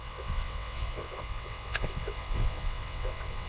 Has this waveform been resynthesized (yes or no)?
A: yes